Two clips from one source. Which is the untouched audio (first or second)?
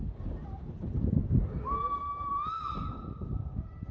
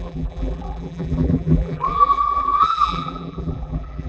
first